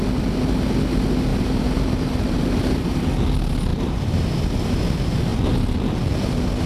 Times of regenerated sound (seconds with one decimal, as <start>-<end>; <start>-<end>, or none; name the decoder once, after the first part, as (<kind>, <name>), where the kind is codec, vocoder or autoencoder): 1.3-3.0 (vocoder, BigVGAN v2); 3.7-4.8

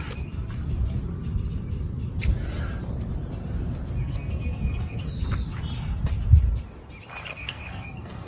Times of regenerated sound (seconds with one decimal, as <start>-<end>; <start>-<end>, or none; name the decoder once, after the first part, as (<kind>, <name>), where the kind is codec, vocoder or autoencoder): 4.0-5.0 (codec, SNAC); 7.3-8.3

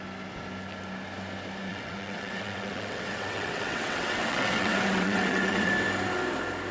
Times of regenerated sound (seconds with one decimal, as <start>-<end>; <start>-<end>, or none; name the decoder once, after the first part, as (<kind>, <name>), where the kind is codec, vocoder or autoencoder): 1.7-5.7 (vocoder, WaveNeXt)

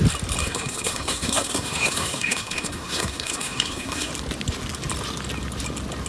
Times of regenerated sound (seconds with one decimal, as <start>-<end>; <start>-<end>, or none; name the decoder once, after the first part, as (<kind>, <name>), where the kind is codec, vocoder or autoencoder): 0.4-4.1 (codec, SNAC)

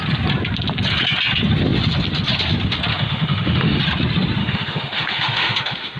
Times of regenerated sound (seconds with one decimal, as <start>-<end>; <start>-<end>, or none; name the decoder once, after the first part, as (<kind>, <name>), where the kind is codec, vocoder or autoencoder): 2.9-3.8 (autoencoder, DAC-VAE); 4.4-6.0